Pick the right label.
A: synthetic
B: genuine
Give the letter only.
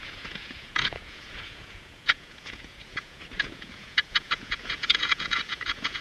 A